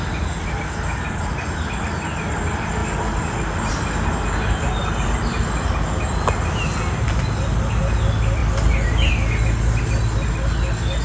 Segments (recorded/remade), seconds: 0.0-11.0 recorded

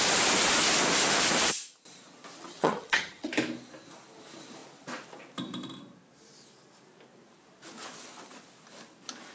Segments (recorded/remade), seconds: 0.0-2.5 recorded; 2.5-3.3 remade; 3.3-9.3 recorded

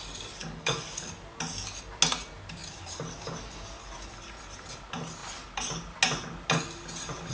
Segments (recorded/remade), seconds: 0.0-0.4 recorded; 0.4-1.1 remade; 1.1-7.3 recorded

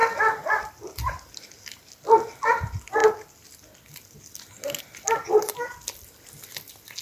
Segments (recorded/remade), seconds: 0.0-7.0 recorded